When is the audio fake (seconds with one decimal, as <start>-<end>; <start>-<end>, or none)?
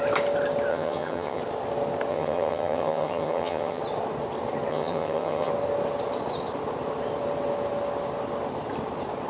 0.7-1.4; 2.1-3.8; 4.7-5.5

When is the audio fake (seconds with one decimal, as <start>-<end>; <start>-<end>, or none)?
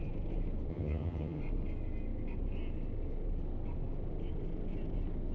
0.7-1.4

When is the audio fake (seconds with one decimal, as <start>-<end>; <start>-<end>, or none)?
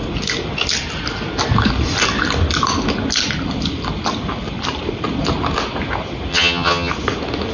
6.3-6.9